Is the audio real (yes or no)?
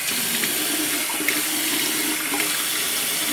yes